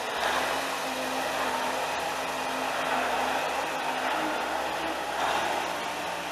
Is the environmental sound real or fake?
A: real